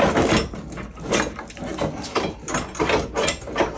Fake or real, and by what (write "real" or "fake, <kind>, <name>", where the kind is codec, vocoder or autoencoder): real